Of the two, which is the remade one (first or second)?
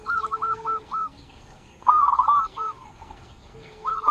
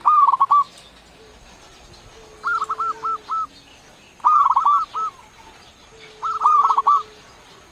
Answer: first